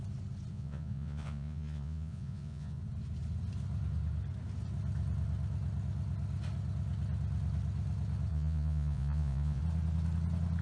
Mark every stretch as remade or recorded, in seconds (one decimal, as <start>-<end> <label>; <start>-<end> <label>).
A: 0.0-0.5 recorded; 0.5-2.8 remade; 2.8-8.3 recorded; 8.3-9.6 remade; 9.6-10.6 recorded